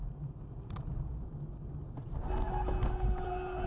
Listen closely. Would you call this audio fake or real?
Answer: real